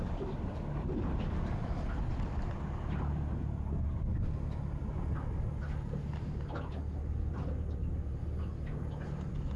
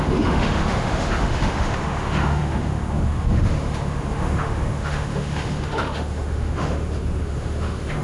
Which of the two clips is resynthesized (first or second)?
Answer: second